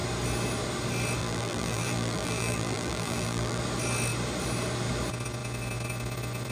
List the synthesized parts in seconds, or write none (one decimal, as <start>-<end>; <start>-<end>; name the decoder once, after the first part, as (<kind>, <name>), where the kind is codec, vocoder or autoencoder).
1.2-3.6 (vocoder, BigVGAN v2)